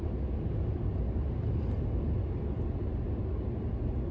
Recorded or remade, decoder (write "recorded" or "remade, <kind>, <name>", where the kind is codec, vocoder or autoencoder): recorded